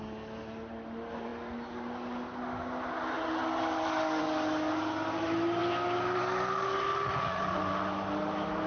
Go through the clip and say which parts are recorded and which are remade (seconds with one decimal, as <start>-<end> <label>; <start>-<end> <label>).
0.0-8.7 recorded